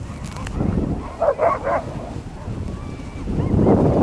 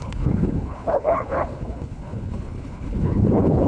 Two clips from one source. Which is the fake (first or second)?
second